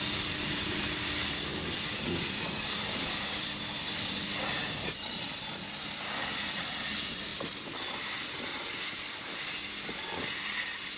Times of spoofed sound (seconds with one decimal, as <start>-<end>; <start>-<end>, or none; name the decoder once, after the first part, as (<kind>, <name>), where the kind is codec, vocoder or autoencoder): 0.0-11.0 (vocoder, BigVGAN v2)